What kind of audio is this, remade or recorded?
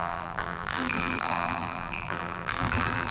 remade